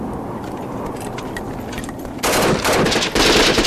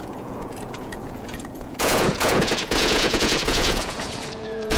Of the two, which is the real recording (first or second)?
first